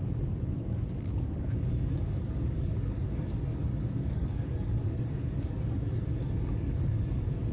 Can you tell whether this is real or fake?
fake